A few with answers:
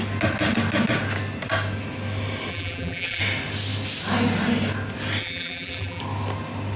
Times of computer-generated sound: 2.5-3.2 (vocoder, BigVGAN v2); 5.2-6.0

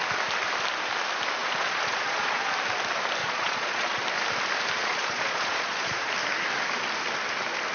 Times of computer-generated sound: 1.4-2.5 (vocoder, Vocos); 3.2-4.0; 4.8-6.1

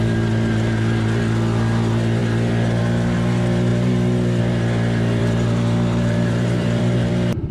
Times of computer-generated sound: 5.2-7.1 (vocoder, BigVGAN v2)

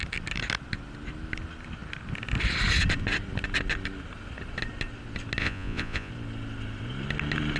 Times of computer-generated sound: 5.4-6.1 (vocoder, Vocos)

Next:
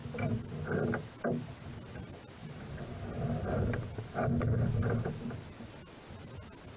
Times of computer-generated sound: none